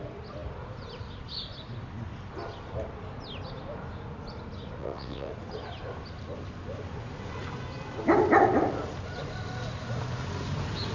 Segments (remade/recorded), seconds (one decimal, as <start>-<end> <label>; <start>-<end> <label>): 0.0-4.8 recorded; 4.8-5.3 remade; 5.3-10.9 recorded